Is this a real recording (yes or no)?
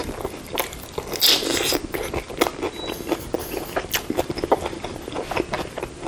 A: yes